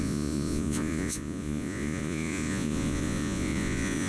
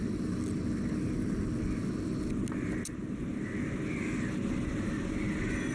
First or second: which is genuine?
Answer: second